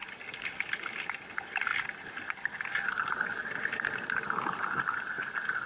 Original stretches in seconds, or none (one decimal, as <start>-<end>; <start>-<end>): 0.0-5.7